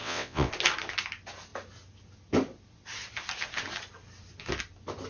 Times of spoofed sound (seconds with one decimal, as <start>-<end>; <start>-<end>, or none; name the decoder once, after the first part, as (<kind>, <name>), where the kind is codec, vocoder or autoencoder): 0.0-0.5 (vocoder, WaveNeXt)